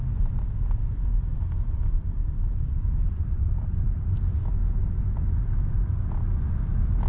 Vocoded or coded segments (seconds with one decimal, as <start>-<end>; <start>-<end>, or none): 1.3-4.0; 4.6-6.1

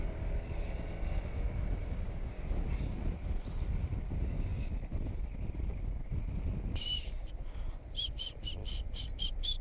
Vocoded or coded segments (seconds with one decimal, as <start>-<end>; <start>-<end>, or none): 1.8-3.9; 4.5-6.0